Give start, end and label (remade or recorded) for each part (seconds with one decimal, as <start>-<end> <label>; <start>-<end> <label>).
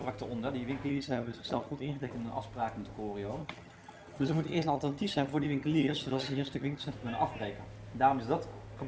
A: 0.0-0.9 recorded; 0.9-2.1 remade; 2.1-3.4 recorded; 3.4-6.9 remade; 6.9-8.9 recorded